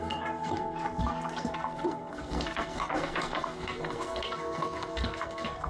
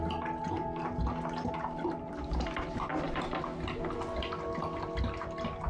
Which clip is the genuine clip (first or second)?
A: second